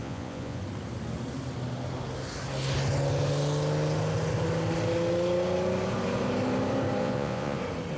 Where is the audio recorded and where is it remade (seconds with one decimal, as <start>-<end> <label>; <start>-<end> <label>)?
0.0-0.6 remade; 0.6-7.0 recorded; 7.0-7.6 remade; 7.6-8.0 recorded

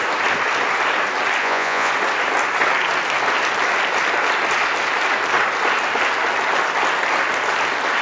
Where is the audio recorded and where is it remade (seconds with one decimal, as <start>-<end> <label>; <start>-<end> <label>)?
0.0-1.4 recorded; 1.4-1.9 remade; 1.9-8.0 recorded

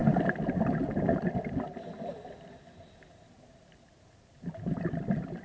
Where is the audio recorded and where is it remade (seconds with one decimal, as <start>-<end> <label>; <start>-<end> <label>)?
0.0-5.4 recorded

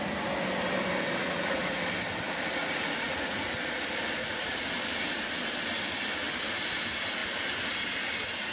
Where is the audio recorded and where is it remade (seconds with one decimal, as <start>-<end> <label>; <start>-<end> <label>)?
0.0-1.2 recorded; 1.2-1.7 remade; 1.7-2.6 recorded; 2.6-3.5 remade; 3.5-4.2 recorded; 4.2-4.7 remade; 4.7-8.5 recorded